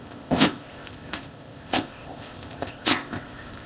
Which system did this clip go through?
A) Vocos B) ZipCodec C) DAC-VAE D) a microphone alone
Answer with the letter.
B